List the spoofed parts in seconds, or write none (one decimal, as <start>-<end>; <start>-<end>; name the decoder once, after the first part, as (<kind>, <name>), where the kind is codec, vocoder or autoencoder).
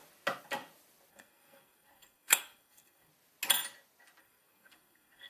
1.1-3.1 (codec, SNAC); 4.2-5.3